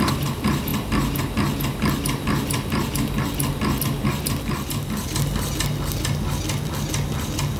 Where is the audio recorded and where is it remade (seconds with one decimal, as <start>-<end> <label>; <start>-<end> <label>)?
0.0-7.6 recorded